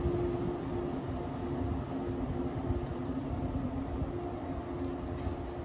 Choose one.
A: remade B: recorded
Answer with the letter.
B